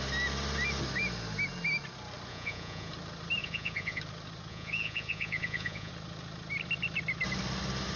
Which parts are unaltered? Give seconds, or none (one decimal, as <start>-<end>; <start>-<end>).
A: 0.0-2.3; 2.9-3.4; 4.0-4.5; 5.9-8.0